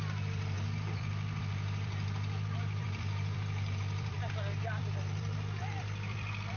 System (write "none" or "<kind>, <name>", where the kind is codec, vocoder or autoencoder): vocoder, BigVGAN v2